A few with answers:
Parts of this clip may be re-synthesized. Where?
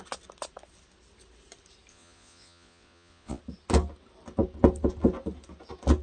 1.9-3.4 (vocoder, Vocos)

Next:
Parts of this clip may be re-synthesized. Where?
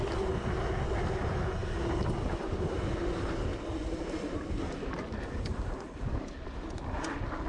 3.5-4.5 (vocoder, BigVGAN v2)